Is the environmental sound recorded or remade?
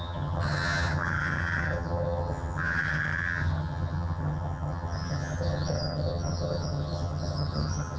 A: remade